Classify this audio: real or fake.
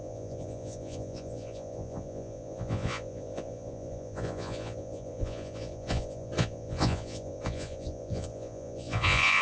fake